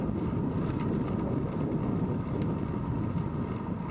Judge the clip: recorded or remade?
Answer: recorded